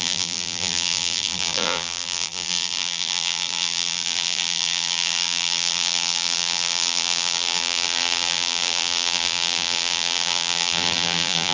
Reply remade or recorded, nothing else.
remade